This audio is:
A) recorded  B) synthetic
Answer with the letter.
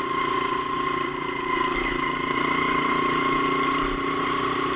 A